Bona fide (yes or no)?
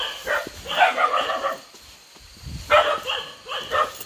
yes